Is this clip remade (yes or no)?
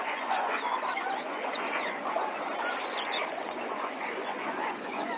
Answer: yes